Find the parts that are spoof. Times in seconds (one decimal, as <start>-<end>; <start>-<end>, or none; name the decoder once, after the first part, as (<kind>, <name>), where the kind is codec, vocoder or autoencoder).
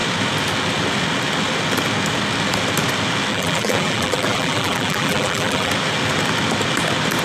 3.3-5.7 (vocoder, BigVGAN v2)